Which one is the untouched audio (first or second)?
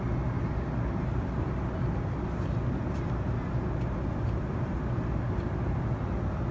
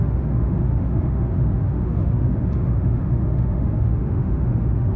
first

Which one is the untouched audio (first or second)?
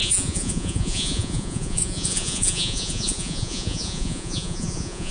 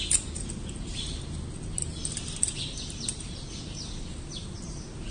second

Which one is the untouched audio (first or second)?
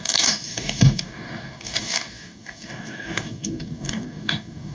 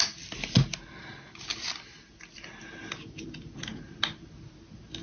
second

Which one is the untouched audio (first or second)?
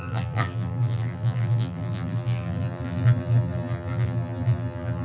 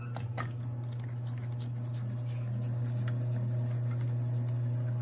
second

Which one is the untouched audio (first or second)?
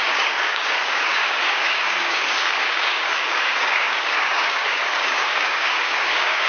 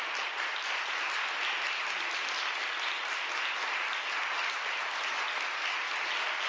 second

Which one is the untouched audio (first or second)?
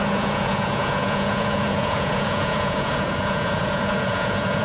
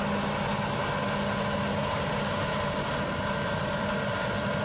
second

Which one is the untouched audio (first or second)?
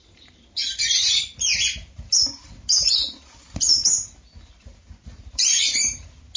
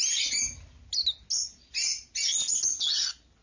second